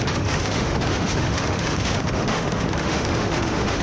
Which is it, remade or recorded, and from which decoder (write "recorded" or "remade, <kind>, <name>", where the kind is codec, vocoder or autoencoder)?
remade, autoencoder, DAC-VAE